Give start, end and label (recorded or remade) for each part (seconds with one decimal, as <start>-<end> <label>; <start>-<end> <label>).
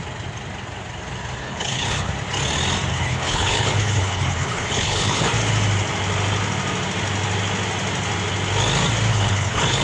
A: 0.0-1.4 recorded; 1.4-2.1 remade; 2.1-2.9 recorded; 2.9-5.3 remade; 5.3-9.1 recorded; 9.1-9.8 remade